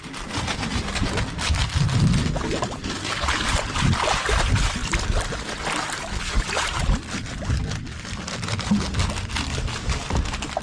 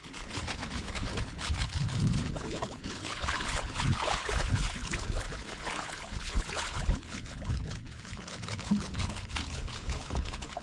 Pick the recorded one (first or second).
first